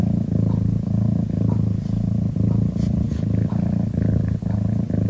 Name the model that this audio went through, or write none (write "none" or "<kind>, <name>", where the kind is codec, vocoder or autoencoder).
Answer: none